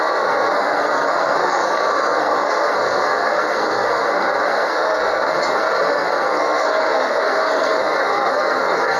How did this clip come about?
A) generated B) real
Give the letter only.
A